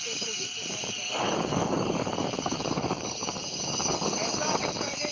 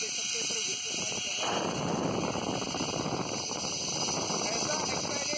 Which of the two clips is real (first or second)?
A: second